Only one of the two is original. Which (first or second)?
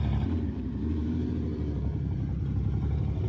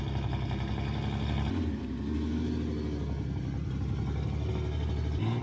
second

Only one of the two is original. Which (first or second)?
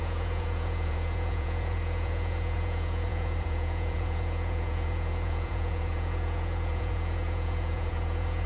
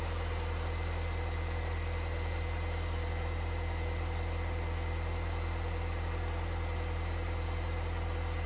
second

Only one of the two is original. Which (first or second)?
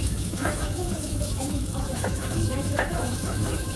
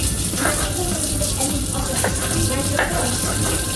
second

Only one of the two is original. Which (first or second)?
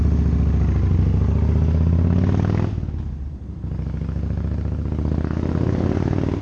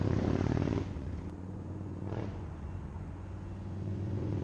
first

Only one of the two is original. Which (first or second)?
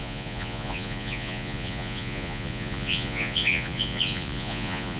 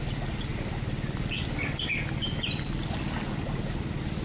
second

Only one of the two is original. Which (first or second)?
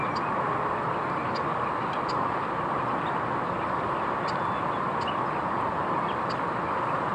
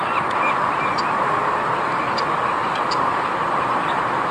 first